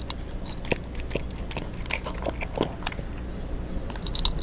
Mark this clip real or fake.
real